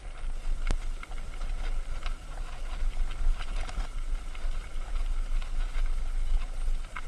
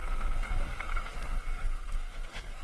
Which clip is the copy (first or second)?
second